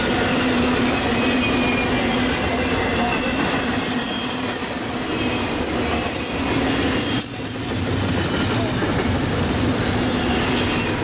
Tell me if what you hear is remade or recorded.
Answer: recorded